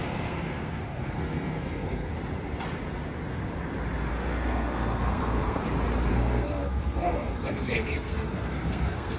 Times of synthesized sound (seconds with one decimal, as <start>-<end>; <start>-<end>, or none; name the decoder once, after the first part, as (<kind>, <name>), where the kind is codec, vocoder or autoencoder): 0.0-2.1 (codec, SNAC); 4.1-5.6; 6.1-9.2